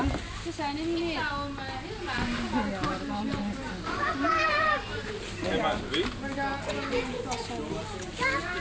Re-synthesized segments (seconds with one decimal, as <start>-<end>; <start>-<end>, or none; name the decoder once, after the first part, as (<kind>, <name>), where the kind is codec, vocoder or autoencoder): none